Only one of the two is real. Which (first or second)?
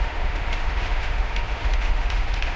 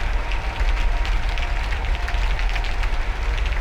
second